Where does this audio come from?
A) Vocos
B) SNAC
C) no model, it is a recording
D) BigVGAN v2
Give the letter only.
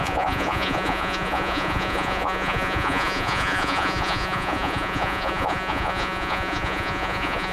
A